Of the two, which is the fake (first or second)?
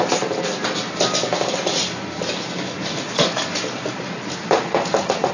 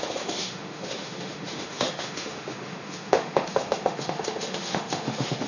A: second